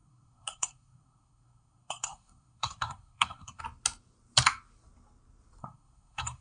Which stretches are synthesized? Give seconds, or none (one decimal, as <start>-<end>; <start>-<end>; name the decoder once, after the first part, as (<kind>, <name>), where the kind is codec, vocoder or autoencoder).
0.0-3.6 (codec, SNAC); 5.6-6.4